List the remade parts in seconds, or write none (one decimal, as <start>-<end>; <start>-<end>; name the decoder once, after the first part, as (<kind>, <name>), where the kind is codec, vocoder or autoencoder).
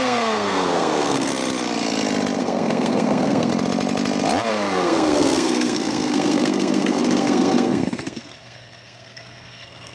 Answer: 0.0-1.3 (codec, SNAC); 2.4-3.5; 4.5-9.9